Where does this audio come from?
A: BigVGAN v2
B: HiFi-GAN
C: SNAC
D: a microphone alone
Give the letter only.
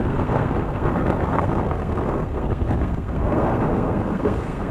C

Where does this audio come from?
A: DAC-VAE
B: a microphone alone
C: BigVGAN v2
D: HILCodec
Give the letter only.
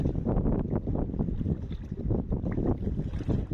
B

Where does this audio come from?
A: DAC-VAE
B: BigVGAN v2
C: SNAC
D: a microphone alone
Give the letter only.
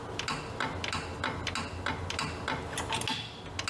D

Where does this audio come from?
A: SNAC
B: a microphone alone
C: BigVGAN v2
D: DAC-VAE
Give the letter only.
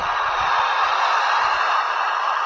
C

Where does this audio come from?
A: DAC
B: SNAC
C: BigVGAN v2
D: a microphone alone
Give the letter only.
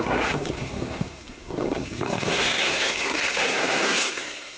B